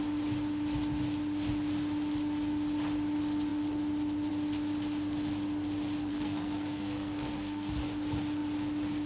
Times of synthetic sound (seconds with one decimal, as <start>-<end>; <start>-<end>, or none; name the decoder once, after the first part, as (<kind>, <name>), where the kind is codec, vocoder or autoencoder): 6.1-7.7 (codec, SNAC)